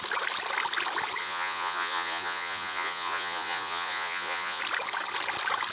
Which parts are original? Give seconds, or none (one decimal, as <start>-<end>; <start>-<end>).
0.0-1.2; 4.6-5.7